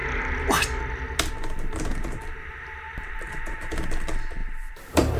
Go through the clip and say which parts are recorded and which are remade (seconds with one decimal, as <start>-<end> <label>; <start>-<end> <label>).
0.0-1.9 recorded; 1.9-3.7 remade; 3.7-4.4 recorded; 4.4-5.2 remade